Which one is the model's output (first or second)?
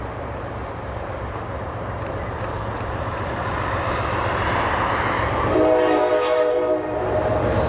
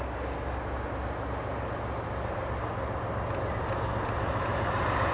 first